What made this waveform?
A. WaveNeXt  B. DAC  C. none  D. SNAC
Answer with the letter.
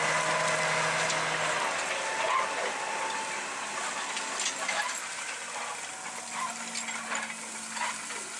C